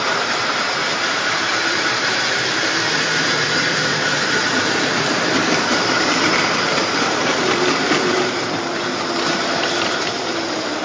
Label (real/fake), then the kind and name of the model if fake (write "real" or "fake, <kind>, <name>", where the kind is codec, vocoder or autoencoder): fake, vocoder, BigVGAN v2